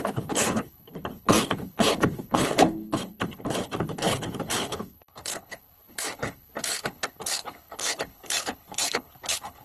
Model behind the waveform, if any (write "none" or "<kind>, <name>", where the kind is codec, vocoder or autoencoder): codec, HILCodec